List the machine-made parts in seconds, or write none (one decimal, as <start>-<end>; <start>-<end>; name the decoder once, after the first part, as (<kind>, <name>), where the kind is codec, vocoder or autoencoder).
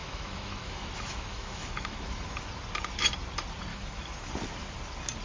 0.0-2.5 (autoencoder, DAC-VAE); 3.7-4.3